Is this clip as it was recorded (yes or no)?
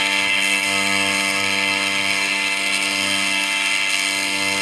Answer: no